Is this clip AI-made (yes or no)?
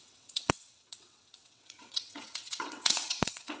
yes